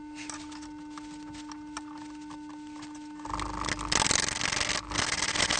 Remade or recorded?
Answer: recorded